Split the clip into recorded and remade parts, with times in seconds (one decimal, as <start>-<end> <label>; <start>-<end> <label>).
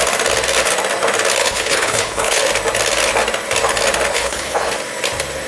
0.0-1.4 recorded; 1.4-2.4 remade; 2.4-4.1 recorded; 4.1-4.7 remade; 4.7-5.5 recorded